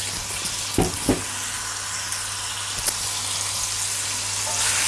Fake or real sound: real